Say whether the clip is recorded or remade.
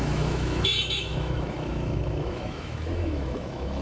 remade